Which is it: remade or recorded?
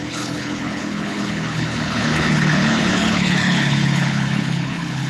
remade